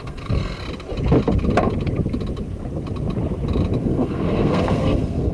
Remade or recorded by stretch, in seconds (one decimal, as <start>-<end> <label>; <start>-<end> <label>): 0.0-0.6 remade; 0.6-3.8 recorded; 3.8-5.3 remade